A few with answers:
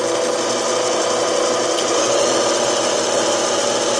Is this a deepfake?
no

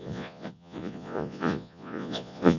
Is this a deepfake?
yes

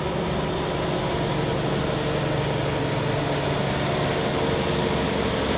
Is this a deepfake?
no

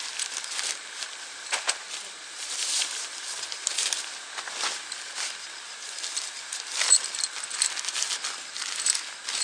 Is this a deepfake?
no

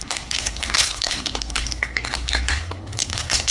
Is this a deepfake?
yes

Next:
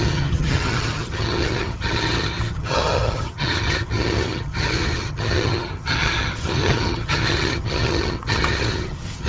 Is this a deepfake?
yes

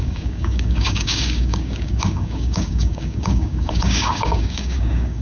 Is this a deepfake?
yes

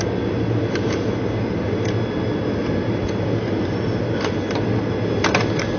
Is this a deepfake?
no